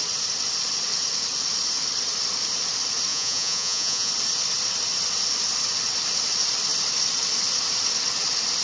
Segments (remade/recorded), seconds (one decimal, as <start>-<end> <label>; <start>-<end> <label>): 0.0-3.1 recorded; 3.1-4.1 remade; 4.1-8.6 recorded